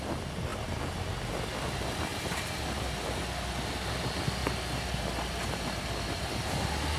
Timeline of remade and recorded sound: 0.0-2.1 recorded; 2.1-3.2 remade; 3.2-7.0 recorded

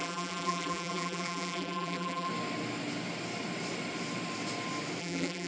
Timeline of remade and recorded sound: 0.0-2.3 remade; 2.3-5.0 recorded; 5.0-5.5 remade

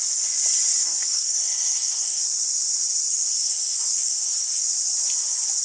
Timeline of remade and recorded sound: 0.0-1.1 recorded; 1.1-2.2 remade; 2.2-3.1 recorded; 3.1-4.6 remade; 4.6-5.6 recorded

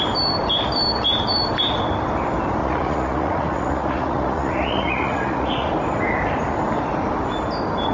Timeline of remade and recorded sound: 0.0-2.6 recorded; 2.6-5.7 remade; 5.7-7.9 recorded

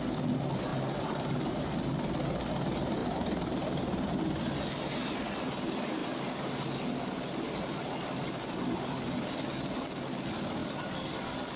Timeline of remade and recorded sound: 0.0-0.7 recorded; 0.7-1.7 remade; 1.7-3.0 recorded; 3.0-4.2 remade; 4.2-11.6 recorded

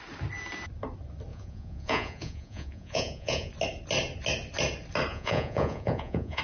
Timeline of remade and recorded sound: 0.0-1.3 recorded; 1.3-3.5 remade; 3.5-5.1 recorded; 5.1-6.4 remade

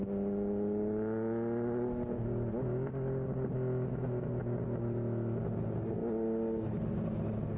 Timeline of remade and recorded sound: 0.0-7.6 recorded